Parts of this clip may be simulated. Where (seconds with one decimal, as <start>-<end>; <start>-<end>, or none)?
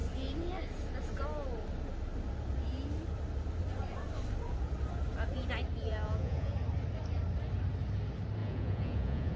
5.9-6.5; 8.4-9.4